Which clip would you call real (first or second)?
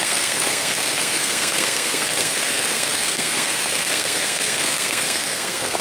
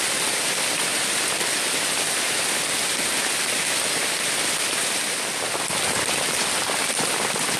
second